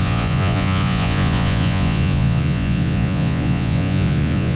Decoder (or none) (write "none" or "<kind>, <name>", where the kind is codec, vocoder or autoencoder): vocoder, Vocos